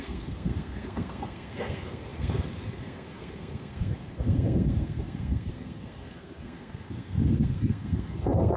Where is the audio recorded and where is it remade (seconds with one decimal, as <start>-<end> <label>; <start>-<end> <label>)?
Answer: 0.0-8.6 remade